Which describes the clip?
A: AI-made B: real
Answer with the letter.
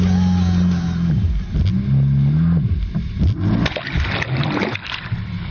B